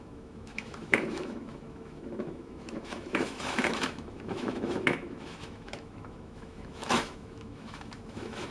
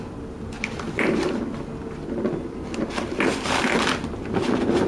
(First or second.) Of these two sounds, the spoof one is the first